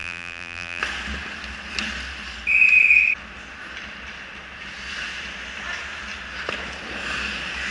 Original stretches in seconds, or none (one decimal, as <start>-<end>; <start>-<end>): 0.8-7.7